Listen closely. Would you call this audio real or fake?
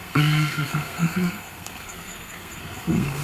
fake